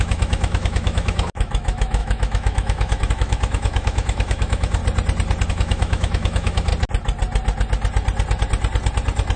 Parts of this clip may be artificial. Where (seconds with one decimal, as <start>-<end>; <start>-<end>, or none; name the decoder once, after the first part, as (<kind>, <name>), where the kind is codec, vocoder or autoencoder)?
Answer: 0.0-4.8 (autoencoder, DAC-VAE); 5.5-6.7